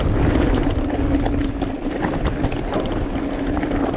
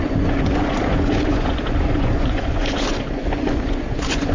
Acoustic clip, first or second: first